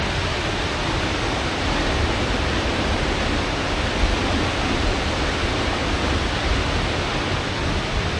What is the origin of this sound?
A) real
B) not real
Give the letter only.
A